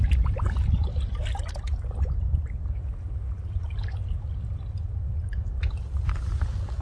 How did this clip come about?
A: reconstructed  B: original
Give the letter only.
B